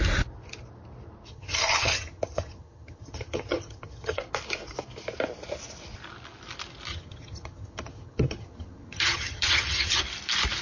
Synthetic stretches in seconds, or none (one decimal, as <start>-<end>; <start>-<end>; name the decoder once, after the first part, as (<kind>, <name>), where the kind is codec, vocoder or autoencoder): 1.3-4.2 (vocoder, HiFi-GAN); 6.9-10.0